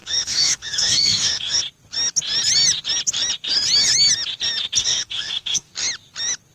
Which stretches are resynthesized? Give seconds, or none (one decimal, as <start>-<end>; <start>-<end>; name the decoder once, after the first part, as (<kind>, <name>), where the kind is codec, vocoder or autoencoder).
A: 0.0-1.6 (autoencoder, DAC-VAE); 4.8-5.7